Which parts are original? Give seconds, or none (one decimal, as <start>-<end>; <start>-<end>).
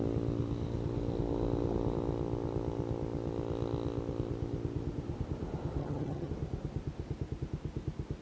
0.0-5.8; 6.3-8.2